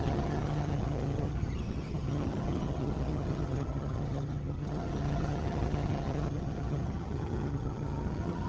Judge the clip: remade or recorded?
remade